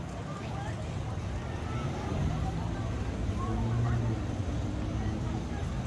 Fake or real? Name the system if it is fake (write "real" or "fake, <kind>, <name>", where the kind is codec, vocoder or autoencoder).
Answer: real